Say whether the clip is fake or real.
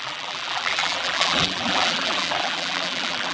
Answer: fake